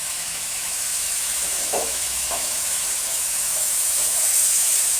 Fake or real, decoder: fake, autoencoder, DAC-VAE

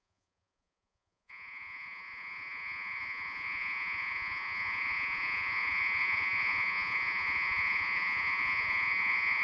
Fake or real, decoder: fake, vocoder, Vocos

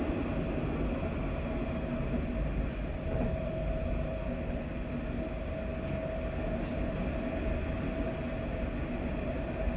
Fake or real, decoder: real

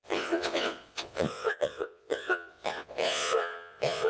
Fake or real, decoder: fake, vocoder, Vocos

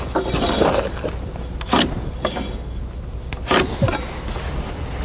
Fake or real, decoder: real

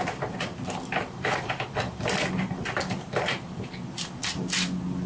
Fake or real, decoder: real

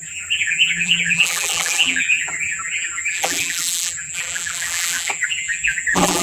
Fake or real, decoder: fake, vocoder, BigVGAN v2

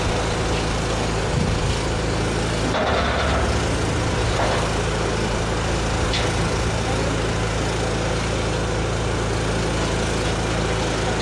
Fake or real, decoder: real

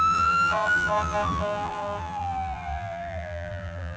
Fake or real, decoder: fake, vocoder, BigVGAN v2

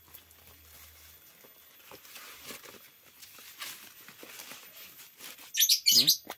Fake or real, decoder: real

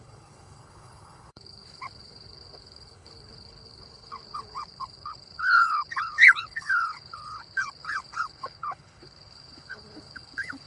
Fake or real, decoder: fake, codec, HILCodec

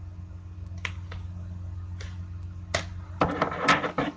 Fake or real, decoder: real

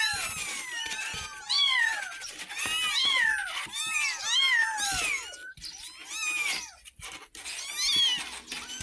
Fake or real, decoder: real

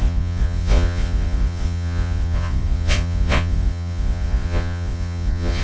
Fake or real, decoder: fake, vocoder, Vocos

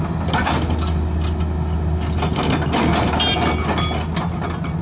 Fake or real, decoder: real